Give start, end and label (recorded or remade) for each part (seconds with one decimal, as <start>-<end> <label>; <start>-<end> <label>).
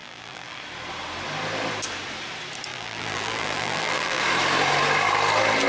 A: 0.0-0.6 remade; 0.6-2.7 recorded; 2.7-4.2 remade; 4.2-5.7 recorded